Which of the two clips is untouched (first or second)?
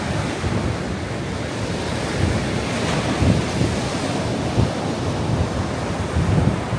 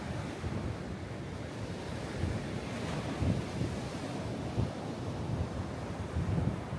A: first